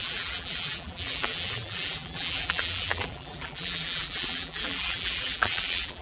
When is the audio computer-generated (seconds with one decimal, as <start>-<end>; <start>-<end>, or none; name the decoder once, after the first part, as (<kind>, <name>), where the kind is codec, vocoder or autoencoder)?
0.0-6.0 (vocoder, BigVGAN v2)